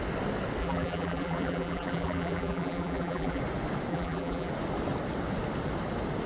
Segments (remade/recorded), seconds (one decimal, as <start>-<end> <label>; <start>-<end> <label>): 0.0-0.6 recorded; 0.6-3.4 remade; 3.4-3.9 recorded; 3.9-4.5 remade; 4.5-6.3 recorded